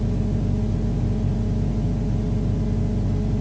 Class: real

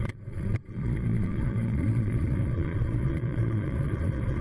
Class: fake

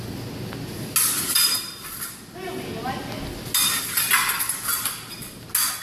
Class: real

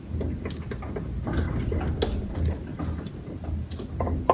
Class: real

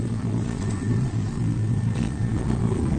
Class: fake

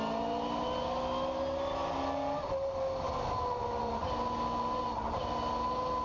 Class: real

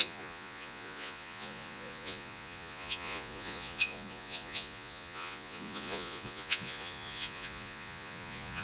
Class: fake